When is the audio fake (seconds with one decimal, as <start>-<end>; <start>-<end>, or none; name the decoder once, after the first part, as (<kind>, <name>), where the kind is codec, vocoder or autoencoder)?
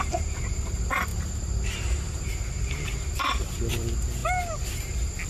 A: 1.1-3.6 (vocoder, BigVGAN v2)